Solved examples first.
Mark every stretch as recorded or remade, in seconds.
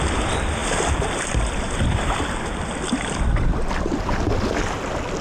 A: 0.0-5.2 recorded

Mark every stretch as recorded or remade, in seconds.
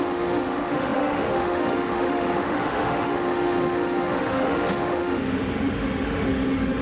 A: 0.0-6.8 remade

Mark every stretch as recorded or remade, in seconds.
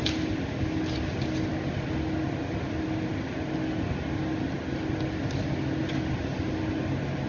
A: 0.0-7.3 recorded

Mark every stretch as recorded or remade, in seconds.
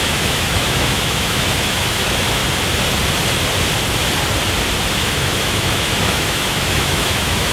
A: 0.0-2.4 remade; 2.4-4.9 recorded; 4.9-7.5 remade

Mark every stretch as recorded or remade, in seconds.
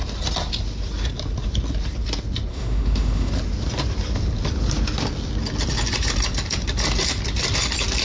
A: 0.0-2.5 recorded; 2.5-3.3 remade; 3.3-8.0 recorded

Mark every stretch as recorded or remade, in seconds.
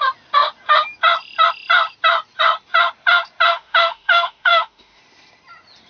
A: 0.0-3.5 recorded; 3.5-5.0 remade; 5.0-5.9 recorded